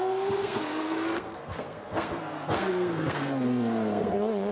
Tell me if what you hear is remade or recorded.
remade